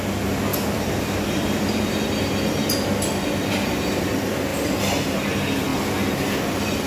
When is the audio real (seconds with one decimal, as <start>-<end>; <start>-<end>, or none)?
0.0-0.5; 2.0-4.5; 5.2-6.9